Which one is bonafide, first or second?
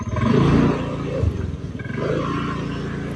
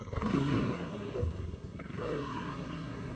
first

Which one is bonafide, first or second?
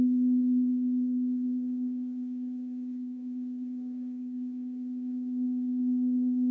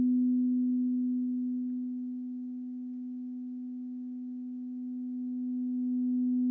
second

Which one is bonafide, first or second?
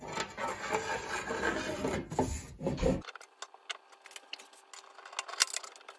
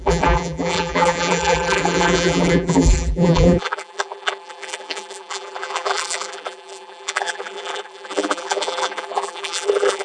first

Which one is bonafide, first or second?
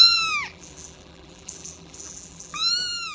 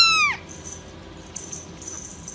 second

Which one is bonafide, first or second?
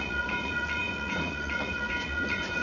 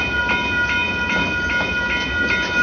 second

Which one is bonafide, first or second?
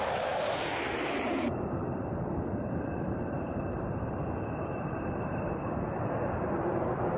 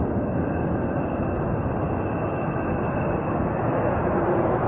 second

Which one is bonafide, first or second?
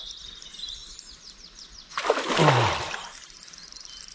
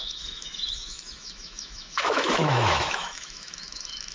first